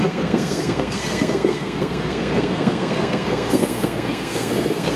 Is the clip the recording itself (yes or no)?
no